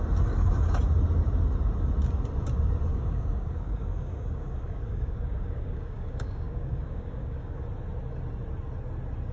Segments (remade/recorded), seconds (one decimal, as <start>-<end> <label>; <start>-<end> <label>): 0.0-2.9 recorded; 2.9-7.6 remade; 7.6-9.3 recorded